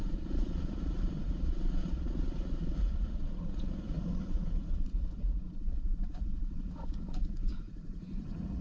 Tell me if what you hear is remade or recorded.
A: remade